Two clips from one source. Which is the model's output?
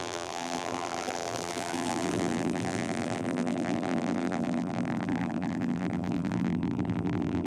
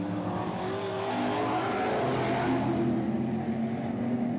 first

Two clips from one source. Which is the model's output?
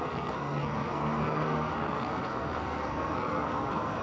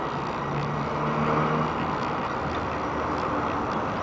first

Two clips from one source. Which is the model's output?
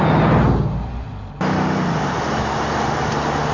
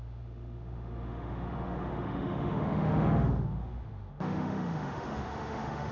second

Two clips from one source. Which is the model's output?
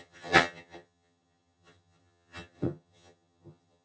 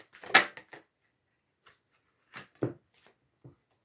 first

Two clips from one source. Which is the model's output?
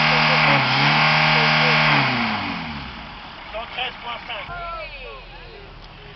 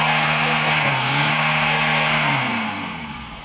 second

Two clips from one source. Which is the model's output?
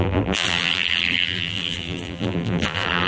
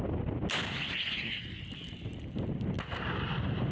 first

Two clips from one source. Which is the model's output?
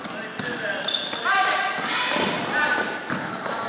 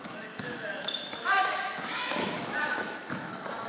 second